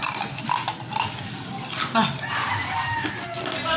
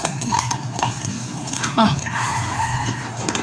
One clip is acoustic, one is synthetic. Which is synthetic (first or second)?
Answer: second